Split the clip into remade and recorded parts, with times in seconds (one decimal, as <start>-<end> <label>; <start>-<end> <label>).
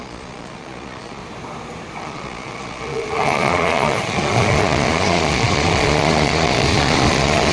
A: 0.0-1.2 remade; 1.2-2.0 recorded; 2.0-7.5 remade